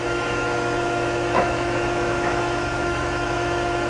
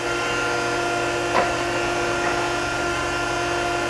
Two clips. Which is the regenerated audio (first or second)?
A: first